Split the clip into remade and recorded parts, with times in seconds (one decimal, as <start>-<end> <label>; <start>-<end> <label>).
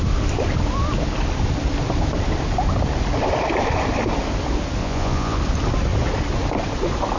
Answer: 0.0-4.8 recorded; 4.8-5.4 remade; 5.4-7.2 recorded